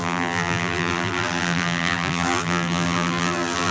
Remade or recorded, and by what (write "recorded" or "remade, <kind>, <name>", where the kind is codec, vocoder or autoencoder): remade, vocoder, BigVGAN v2